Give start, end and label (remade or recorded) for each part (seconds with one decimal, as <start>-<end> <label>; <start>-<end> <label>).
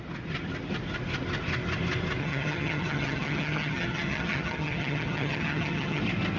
0.0-2.2 recorded; 2.2-6.0 remade; 6.0-6.4 recorded